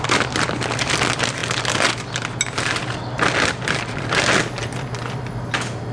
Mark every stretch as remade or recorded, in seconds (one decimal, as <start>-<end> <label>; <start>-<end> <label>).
0.0-5.9 recorded